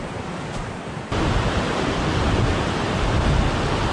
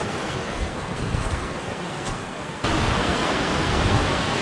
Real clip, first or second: first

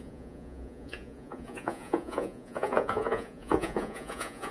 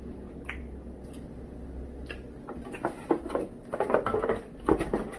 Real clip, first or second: second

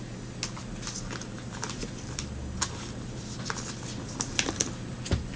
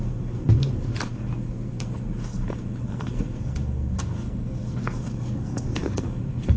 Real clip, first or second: first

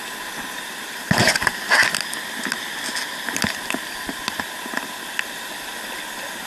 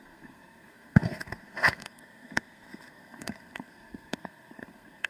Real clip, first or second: first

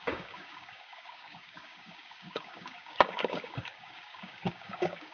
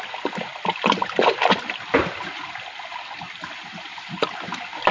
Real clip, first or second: second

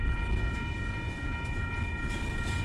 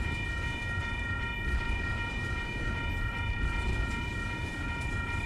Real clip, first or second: first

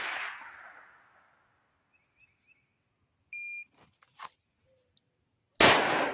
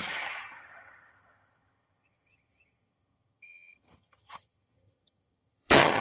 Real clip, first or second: first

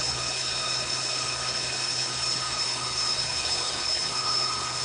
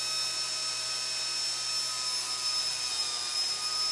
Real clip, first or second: second